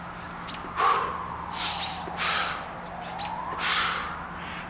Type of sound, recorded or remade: recorded